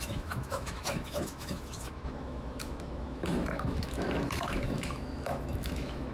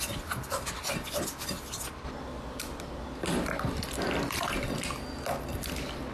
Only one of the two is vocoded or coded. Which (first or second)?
first